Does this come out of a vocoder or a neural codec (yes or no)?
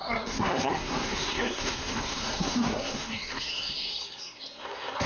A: yes